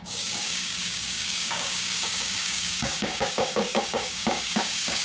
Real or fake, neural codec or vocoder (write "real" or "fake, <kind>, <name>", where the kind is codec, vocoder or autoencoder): fake, codec, DAC